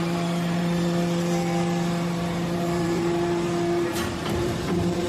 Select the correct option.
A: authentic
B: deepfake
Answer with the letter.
B